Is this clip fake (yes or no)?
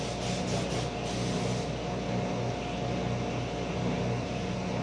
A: no